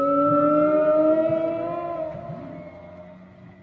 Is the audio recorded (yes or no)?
yes